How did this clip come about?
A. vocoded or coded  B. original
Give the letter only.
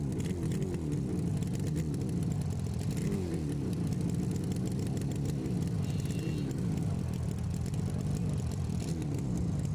B